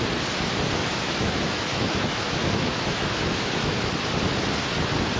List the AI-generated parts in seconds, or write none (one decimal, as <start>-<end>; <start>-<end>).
0.8-3.9